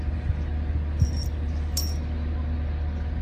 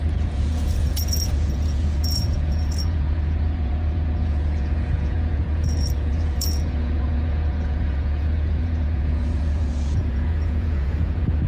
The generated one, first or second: second